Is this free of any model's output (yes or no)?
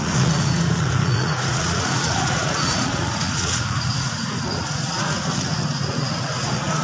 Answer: no